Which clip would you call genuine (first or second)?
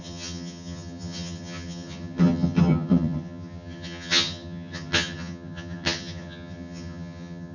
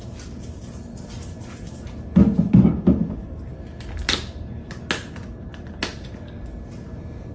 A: second